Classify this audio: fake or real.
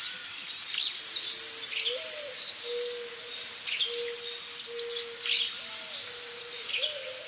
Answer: real